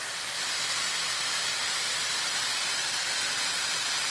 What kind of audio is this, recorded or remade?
recorded